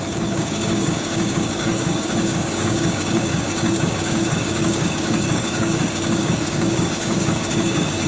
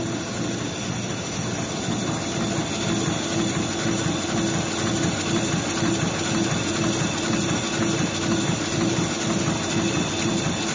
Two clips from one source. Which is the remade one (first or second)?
first